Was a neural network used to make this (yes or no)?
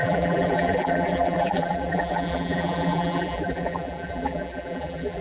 yes